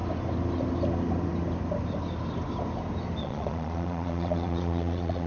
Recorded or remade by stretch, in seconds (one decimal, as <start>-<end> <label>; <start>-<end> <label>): 0.0-3.2 recorded; 3.2-5.3 remade